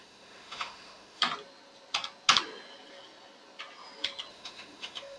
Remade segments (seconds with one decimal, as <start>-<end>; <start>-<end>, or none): 0.0-1.2; 4.3-5.2